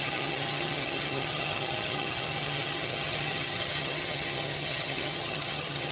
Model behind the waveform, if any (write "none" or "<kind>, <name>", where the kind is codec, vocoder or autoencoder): vocoder, HiFi-GAN